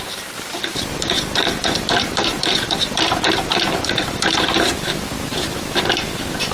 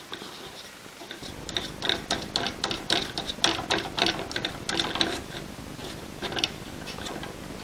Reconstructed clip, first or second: first